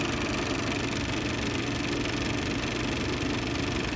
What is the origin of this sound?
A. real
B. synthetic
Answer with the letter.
A